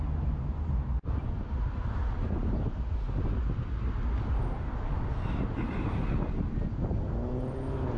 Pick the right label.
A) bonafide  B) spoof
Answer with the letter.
A